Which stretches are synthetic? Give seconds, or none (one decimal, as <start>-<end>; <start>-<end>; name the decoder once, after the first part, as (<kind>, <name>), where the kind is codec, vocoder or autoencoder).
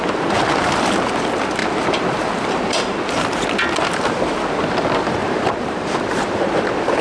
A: 1.6-3.2 (vocoder, BigVGAN v2); 5.2-6.3